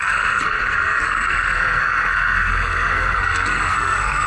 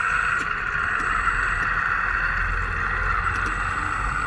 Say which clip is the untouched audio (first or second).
second